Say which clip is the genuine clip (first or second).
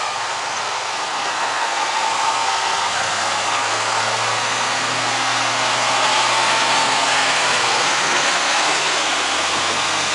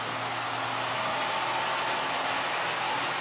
second